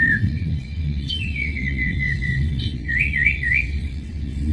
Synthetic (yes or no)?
yes